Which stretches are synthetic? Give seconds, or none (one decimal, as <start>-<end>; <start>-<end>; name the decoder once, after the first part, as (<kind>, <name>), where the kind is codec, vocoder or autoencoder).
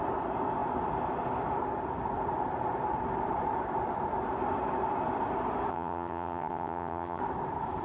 5.7-7.2 (vocoder, HiFi-GAN)